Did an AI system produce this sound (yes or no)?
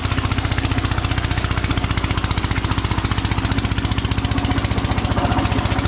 no